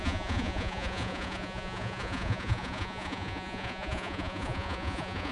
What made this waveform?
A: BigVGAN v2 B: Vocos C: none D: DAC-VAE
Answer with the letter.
B